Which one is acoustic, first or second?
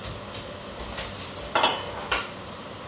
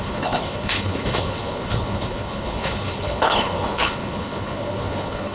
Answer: first